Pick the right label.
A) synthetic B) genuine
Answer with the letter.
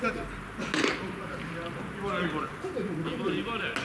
B